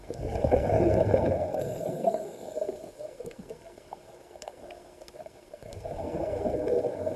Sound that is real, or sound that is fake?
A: fake